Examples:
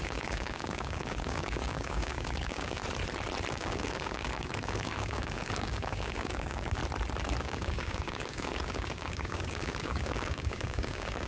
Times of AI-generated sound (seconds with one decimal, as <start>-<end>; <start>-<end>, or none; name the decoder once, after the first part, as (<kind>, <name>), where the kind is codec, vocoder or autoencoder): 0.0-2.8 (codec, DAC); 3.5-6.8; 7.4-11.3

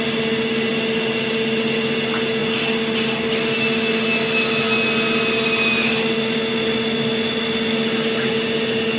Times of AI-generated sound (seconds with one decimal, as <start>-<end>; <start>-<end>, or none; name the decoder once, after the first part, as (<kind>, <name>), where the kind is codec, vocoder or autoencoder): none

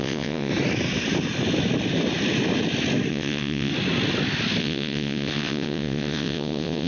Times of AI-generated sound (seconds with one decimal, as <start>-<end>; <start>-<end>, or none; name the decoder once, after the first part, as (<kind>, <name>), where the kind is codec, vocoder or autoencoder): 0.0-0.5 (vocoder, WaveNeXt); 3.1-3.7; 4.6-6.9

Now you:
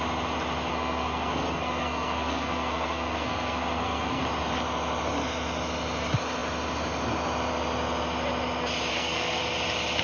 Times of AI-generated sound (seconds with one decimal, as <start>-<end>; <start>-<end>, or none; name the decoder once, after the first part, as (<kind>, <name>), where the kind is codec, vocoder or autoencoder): 0.7-4.2 (codec, SNAC); 8.9-9.4

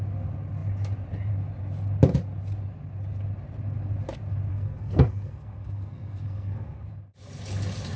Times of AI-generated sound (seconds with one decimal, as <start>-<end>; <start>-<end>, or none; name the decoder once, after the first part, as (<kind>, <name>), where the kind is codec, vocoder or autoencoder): 4.5-6.9 (codec, SNAC)

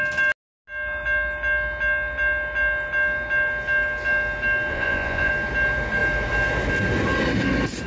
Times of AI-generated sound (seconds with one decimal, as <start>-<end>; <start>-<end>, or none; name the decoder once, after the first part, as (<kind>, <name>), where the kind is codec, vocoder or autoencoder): 4.7-5.3 (vocoder, Vocos)

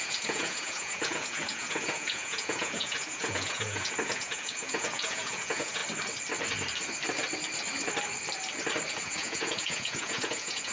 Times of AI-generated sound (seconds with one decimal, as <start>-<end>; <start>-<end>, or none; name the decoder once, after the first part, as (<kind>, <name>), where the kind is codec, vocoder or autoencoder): 0.0-5.8 (vocoder, Vocos); 8.9-10.7

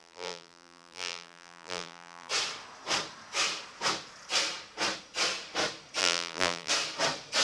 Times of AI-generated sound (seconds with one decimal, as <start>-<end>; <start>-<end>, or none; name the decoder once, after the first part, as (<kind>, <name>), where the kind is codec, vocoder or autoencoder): 0.0-2.3 (vocoder, BigVGAN v2); 6.0-6.7